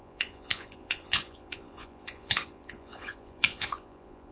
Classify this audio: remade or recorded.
remade